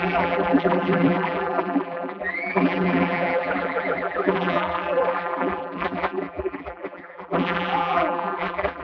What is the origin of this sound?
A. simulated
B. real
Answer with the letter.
A